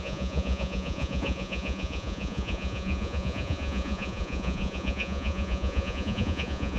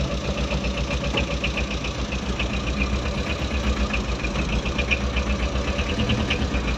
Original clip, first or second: second